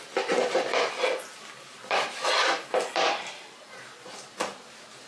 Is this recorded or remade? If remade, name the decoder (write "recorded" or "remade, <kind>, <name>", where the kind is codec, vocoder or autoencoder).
recorded